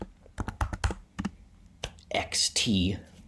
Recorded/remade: recorded